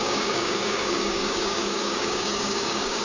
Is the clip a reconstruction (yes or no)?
yes